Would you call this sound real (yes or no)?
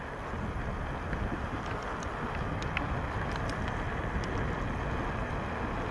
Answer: yes